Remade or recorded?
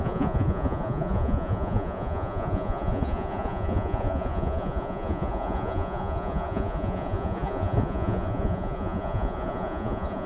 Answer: remade